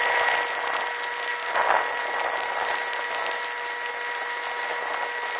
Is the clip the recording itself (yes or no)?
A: yes